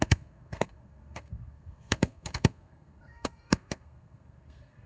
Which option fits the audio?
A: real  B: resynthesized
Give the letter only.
B